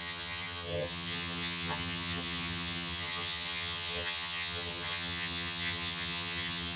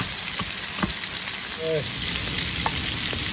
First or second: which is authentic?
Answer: second